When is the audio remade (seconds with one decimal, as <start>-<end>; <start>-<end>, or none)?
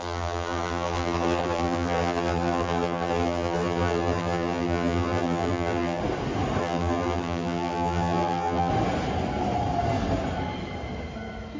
0.0-6.0; 6.6-8.7